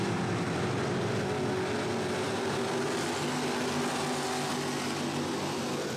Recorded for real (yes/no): yes